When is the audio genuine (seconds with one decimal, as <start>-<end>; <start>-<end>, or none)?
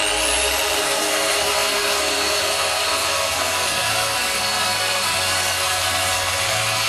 0.0-0.8